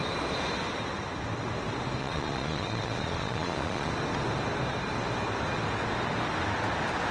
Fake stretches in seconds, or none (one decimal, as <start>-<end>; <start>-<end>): 2.0-3.9